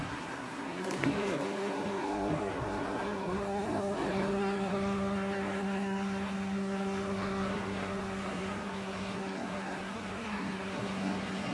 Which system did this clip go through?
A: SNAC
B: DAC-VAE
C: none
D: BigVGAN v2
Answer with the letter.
A